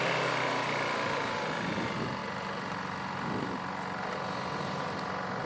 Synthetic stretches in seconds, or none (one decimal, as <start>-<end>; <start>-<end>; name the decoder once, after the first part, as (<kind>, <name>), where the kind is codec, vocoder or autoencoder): none